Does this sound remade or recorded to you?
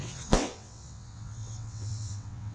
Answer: remade